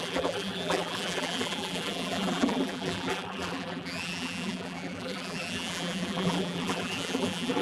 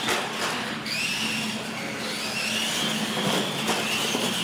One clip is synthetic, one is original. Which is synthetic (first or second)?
first